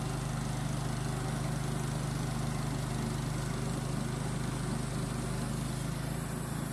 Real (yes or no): yes